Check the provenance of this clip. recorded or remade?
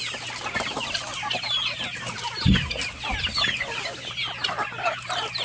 recorded